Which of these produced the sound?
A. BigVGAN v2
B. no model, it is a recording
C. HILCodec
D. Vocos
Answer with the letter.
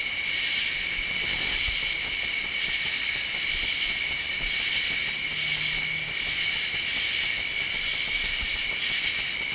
B